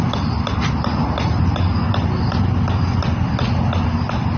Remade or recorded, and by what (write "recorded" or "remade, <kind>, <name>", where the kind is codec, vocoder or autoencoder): recorded